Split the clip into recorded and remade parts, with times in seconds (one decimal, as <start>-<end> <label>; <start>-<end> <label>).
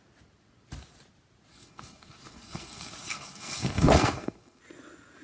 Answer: 0.0-1.5 recorded; 1.5-4.6 remade; 4.6-5.2 recorded